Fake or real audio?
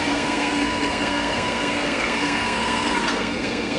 fake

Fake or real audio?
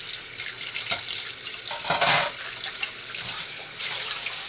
real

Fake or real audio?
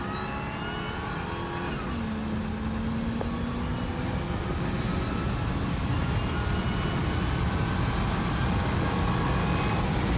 real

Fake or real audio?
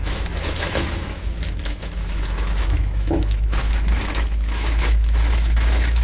fake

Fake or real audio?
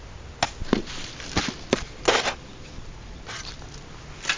real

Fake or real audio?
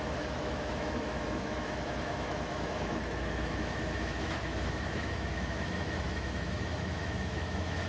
fake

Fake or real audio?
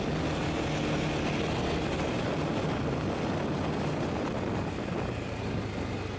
real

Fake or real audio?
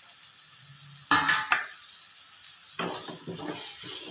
real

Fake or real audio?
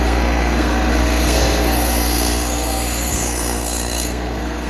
fake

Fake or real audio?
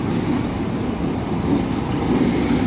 real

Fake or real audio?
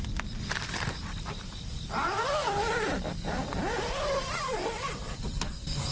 fake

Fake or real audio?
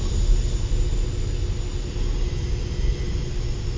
real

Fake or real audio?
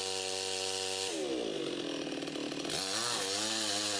real